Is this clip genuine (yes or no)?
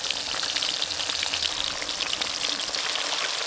yes